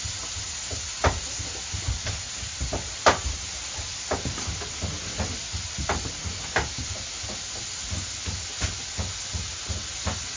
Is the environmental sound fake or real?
real